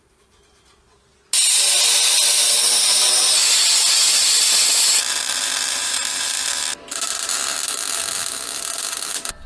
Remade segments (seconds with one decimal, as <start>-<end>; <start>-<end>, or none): 5.8-6.4